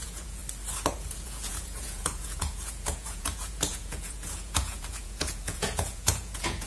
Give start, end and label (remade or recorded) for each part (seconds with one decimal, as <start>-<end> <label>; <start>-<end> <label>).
0.0-0.4 remade; 0.4-0.9 recorded; 0.9-6.7 remade